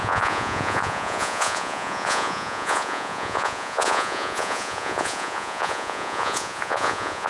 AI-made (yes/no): yes